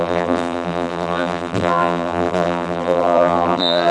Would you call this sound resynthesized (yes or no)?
yes